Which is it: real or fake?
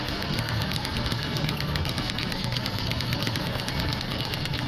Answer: fake